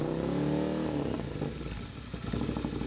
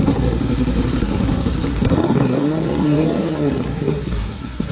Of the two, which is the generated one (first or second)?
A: second